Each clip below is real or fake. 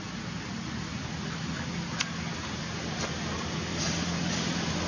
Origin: real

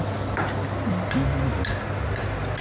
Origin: real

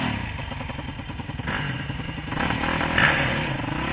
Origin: real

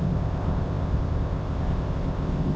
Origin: fake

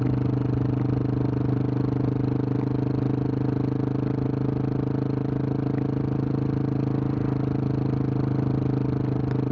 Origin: real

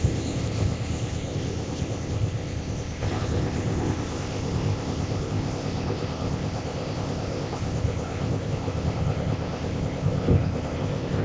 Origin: fake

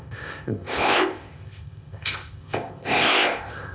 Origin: fake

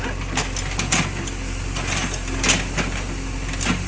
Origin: real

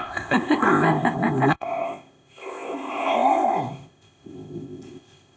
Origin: fake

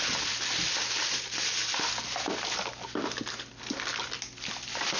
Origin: real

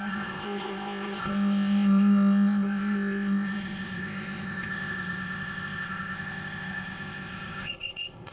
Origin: fake